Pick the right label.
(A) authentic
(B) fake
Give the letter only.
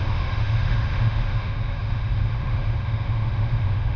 B